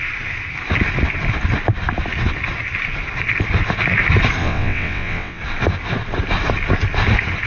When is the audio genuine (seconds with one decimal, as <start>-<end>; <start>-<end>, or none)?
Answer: 0.0-4.4; 5.4-7.5